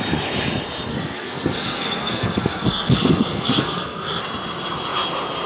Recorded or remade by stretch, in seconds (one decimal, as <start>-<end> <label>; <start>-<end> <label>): 0.0-0.9 recorded; 0.9-4.2 remade; 4.2-5.5 recorded

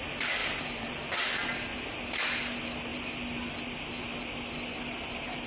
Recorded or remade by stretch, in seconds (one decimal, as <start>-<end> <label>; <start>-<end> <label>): 0.0-0.4 recorded; 0.4-1.1 remade; 1.1-2.9 recorded; 2.9-3.5 remade; 3.5-5.5 recorded

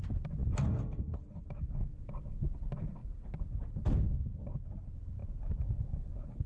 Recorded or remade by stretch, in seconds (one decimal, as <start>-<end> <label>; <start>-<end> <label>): 0.0-6.5 recorded

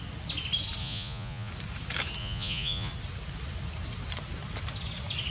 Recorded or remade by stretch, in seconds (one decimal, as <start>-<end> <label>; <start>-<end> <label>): 0.0-0.8 recorded; 0.8-1.5 remade; 1.5-2.2 recorded; 2.2-2.9 remade; 2.9-5.3 recorded

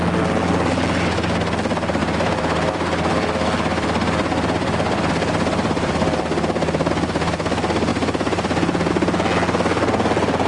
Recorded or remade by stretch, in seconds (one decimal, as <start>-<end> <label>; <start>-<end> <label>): 0.0-2.0 recorded; 2.0-6.9 remade; 6.9-7.9 recorded; 7.9-8.9 remade; 8.9-10.5 recorded

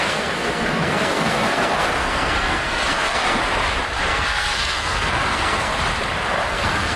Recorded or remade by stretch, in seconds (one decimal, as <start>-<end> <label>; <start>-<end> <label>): 0.0-3.4 remade; 3.4-4.0 recorded; 4.0-5.7 remade; 5.7-6.5 recorded; 6.5-7.0 remade

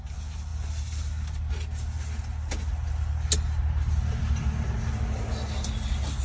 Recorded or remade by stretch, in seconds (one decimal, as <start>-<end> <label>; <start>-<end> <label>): 0.0-6.2 recorded